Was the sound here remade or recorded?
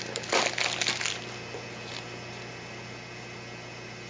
recorded